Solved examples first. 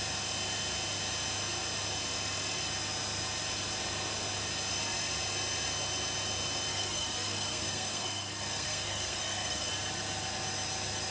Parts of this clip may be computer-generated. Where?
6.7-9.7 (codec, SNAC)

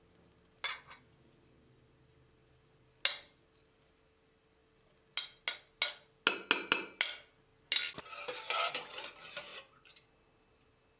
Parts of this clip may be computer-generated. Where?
none

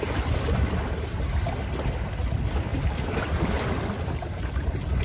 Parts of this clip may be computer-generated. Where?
none

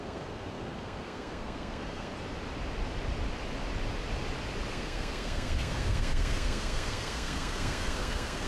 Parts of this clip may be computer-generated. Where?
0.0-2.1 (codec, SNAC); 4.7-8.5

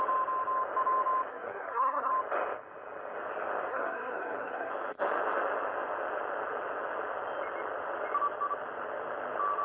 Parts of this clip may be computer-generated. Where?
1.3-2.1 (codec, SNAC); 3.7-4.7

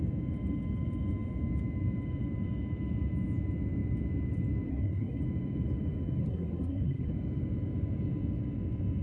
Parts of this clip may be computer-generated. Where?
4.7-5.2 (codec, SNAC); 6.2-7.1

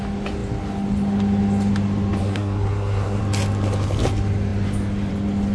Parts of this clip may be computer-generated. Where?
2.2-3.2 (codec, SNAC)

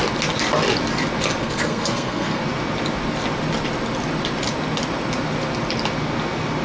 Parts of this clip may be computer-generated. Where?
1.4-2.4 (codec, SNAC)